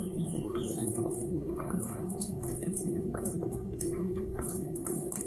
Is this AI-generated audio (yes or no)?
yes